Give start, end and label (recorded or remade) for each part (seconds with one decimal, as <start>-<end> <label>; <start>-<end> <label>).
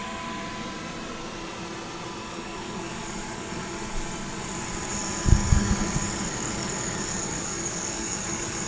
0.0-2.2 recorded; 2.2-4.0 remade; 4.0-5.4 recorded; 5.4-8.7 remade